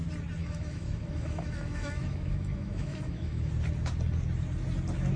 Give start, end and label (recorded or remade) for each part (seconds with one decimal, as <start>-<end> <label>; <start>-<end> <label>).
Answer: 0.0-0.4 recorded; 0.4-3.5 remade; 3.5-5.2 recorded